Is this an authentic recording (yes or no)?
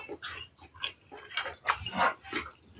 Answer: yes